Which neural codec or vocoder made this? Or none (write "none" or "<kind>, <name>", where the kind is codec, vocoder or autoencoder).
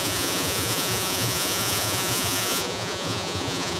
vocoder, Vocos